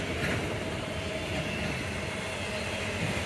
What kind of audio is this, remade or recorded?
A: recorded